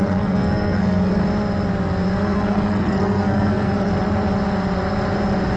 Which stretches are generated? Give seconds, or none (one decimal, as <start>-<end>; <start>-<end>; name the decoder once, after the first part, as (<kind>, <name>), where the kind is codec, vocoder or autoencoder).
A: 0.0-1.2 (codec, SNAC); 2.2-3.9